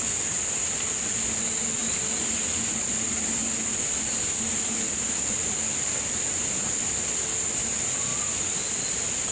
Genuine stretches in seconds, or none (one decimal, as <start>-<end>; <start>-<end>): 0.0-9.3